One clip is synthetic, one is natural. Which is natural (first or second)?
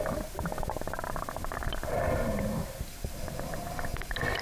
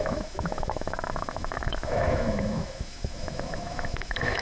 first